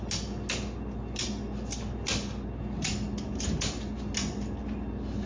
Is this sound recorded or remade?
recorded